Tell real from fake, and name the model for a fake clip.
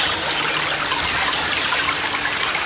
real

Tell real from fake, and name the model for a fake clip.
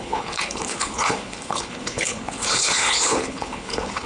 fake, codec, HILCodec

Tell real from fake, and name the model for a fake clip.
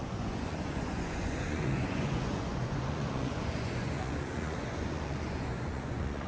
fake, vocoder, Vocos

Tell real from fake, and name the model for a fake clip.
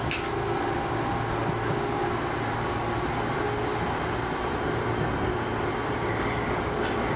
real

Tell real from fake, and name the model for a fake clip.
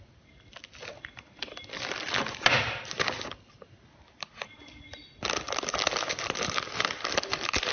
real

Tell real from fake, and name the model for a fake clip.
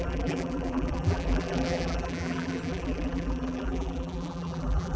fake, vocoder, BigVGAN v2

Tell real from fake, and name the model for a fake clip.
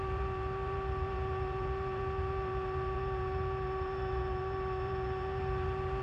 fake, vocoder, BigVGAN v2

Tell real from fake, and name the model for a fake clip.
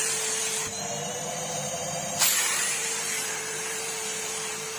fake, vocoder, BigVGAN v2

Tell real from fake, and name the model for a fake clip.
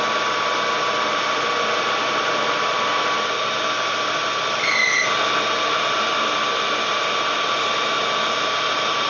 real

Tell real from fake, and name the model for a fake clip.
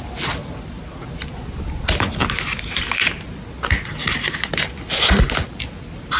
real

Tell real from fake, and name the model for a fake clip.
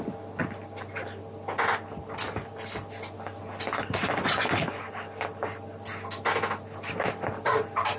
real